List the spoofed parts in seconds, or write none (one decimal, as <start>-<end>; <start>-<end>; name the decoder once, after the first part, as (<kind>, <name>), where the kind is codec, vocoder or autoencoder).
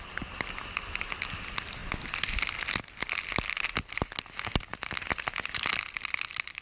none